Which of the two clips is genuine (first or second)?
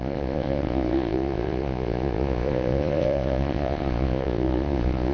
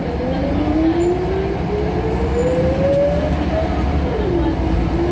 second